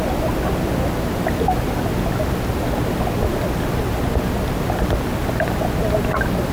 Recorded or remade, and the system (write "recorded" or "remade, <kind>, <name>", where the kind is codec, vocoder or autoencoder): recorded